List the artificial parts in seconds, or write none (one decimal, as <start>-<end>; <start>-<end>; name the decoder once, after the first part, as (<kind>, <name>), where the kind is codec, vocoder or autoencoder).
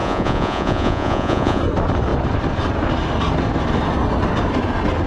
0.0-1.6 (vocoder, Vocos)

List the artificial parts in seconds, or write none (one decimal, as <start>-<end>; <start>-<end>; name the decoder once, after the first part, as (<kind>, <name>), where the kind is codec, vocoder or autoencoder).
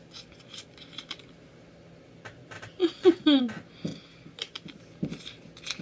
2.8-3.4 (vocoder, Vocos)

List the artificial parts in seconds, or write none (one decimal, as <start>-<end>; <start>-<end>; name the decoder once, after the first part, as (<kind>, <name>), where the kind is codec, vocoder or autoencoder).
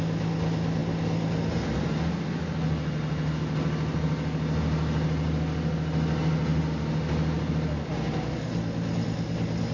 none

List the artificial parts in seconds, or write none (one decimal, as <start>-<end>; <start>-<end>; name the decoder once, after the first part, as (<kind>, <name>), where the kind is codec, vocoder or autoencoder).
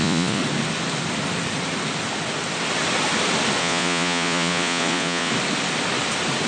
0.0-0.4 (vocoder, Vocos); 3.6-5.3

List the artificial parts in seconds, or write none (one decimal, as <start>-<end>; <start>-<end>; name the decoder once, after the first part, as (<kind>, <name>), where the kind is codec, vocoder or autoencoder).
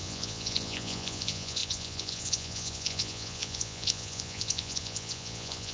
0.0-5.7 (vocoder, Vocos)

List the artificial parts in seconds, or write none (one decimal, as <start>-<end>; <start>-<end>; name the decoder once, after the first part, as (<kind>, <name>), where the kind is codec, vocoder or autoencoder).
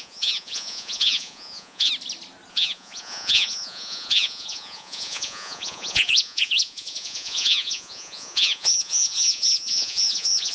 0.0-1.9 (vocoder, Vocos); 2.5-10.5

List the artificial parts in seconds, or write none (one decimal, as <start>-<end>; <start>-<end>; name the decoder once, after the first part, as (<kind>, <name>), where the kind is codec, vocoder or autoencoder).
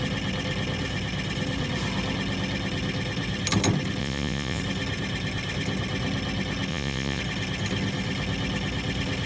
4.0-4.6 (vocoder, Vocos); 6.7-7.2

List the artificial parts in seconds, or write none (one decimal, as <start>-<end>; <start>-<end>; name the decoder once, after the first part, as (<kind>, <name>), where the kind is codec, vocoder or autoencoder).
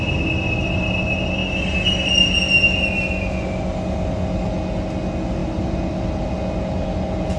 none